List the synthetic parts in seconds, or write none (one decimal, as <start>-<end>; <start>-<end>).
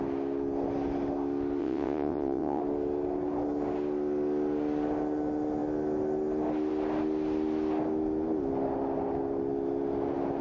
1.6-2.6